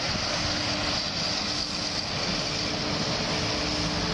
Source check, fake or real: real